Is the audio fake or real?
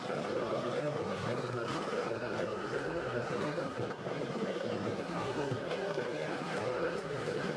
fake